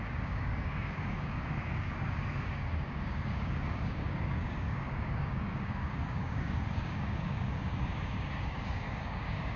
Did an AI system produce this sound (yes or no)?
yes